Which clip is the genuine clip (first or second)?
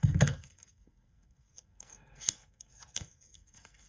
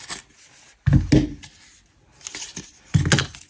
second